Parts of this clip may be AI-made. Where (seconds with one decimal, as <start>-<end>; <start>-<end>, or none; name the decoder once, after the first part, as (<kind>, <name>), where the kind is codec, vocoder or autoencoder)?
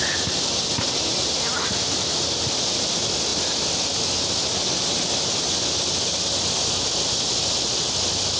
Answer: none